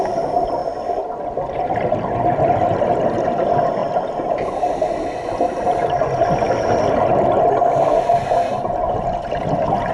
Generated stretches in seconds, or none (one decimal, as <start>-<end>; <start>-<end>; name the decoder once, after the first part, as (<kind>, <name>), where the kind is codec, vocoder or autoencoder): none